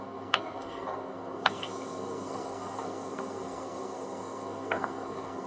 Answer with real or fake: fake